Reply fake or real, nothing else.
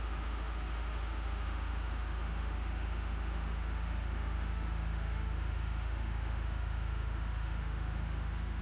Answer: fake